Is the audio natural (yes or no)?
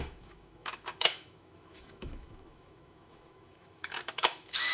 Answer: no